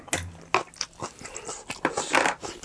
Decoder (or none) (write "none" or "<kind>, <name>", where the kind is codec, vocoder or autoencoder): none